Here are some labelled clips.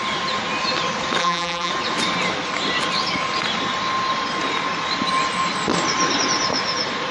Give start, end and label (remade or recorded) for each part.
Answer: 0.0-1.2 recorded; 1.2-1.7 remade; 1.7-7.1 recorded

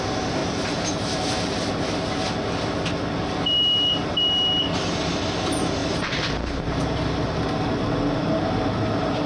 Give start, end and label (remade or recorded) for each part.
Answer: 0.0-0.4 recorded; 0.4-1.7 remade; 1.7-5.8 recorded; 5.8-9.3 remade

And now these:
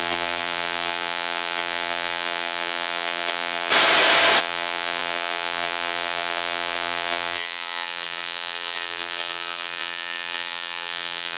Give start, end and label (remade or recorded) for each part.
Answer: 0.0-3.7 remade; 3.7-4.4 recorded; 4.4-11.4 remade

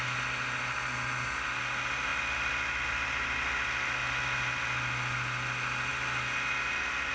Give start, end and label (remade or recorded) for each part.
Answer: 0.0-7.1 recorded

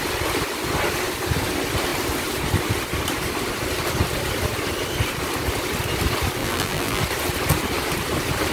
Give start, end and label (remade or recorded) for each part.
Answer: 0.0-6.4 recorded; 6.4-7.0 remade; 7.0-8.5 recorded

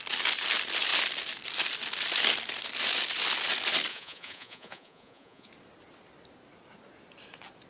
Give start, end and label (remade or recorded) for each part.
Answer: 0.0-3.9 recorded; 3.9-5.5 remade; 5.5-7.7 recorded